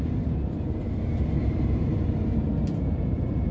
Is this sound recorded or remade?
remade